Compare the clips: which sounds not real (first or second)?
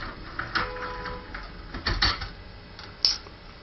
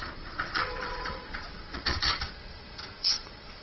second